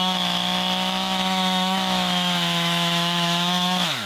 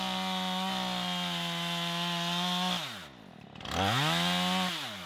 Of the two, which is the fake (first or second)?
first